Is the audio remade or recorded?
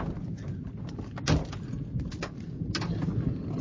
recorded